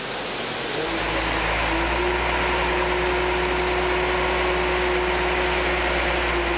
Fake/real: real